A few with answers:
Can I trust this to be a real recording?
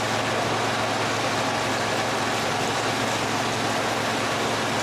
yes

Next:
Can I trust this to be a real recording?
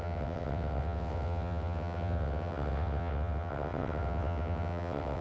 no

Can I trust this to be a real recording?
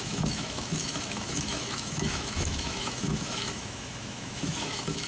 no